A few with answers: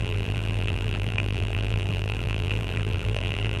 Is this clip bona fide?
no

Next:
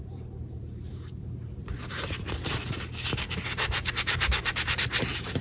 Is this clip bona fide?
no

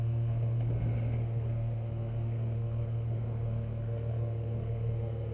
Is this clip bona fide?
no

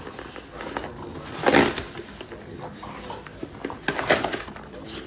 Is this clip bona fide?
yes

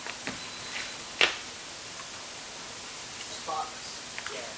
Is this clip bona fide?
yes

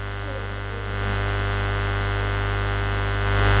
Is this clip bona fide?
yes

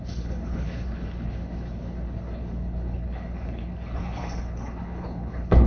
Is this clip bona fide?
no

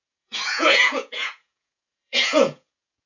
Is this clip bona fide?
no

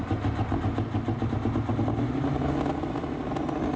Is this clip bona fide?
yes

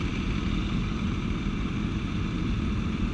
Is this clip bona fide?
yes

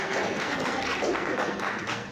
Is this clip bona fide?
no